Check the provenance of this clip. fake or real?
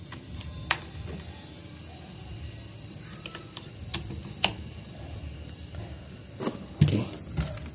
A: real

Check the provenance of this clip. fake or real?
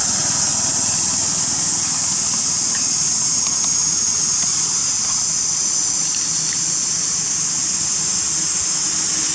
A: real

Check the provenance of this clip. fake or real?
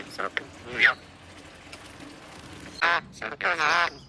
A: real